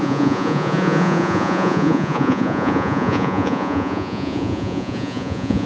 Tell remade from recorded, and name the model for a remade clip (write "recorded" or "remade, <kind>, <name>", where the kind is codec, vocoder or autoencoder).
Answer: remade, vocoder, Vocos